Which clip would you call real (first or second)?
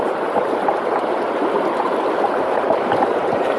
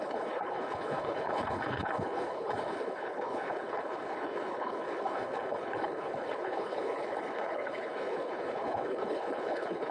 first